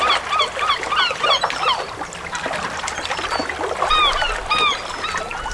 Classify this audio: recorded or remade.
recorded